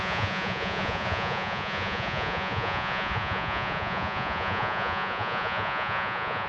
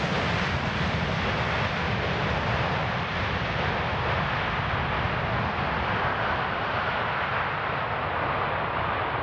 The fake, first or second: first